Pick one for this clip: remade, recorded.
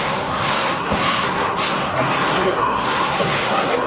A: remade